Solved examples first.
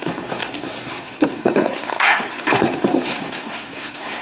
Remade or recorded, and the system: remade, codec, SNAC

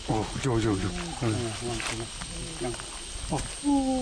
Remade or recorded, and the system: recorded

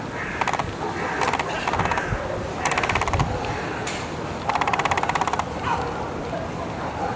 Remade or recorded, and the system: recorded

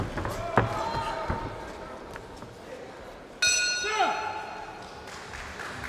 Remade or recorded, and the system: recorded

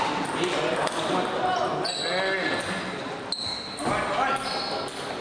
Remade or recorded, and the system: recorded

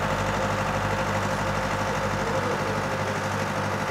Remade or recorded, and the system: recorded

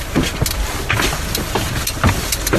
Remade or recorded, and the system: recorded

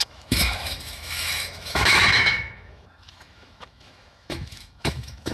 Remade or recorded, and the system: remade, autoencoder, DAC-VAE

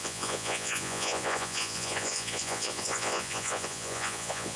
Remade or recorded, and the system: remade, vocoder, Vocos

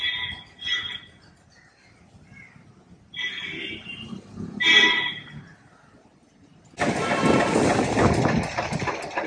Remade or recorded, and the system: recorded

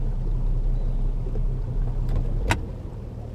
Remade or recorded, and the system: recorded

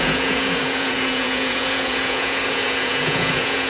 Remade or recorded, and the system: remade, vocoder, Vocos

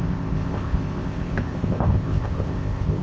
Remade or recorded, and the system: remade, codec, ZipCodec